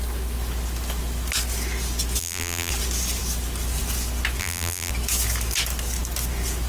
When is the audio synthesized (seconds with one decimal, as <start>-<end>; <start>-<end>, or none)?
2.2-2.7; 4.4-4.9